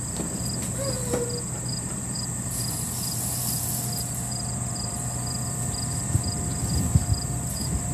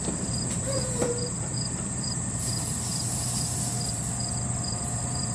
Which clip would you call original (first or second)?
first